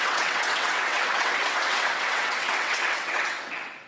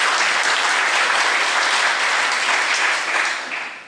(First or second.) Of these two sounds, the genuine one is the second